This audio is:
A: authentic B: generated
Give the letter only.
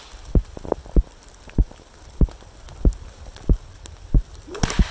A